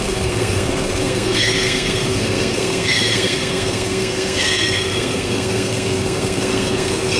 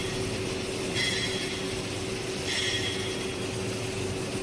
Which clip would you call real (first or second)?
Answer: second